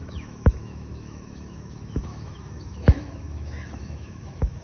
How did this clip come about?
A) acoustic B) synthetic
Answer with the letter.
B